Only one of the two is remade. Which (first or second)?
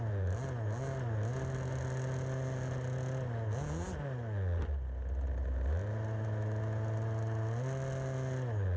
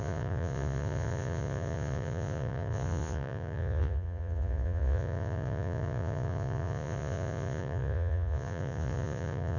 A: second